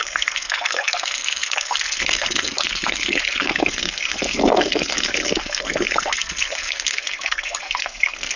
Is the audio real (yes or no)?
no